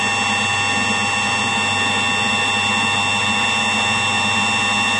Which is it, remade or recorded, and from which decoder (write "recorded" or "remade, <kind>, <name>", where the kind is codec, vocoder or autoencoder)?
recorded